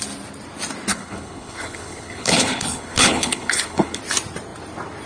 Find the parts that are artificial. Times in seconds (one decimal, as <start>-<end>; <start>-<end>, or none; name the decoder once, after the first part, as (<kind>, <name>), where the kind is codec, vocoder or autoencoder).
0.9-4.0 (codec, HILCodec)